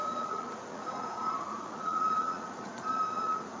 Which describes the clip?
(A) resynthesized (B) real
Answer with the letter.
A